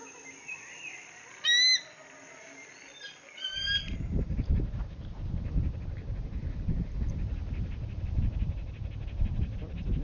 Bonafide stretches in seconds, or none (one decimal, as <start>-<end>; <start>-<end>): 0.0-10.0